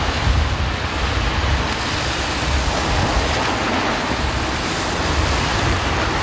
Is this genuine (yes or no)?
yes